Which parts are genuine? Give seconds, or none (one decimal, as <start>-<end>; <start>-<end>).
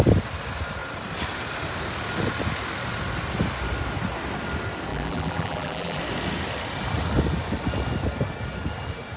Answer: 0.0-4.9; 6.0-9.2